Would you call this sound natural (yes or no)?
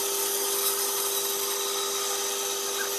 yes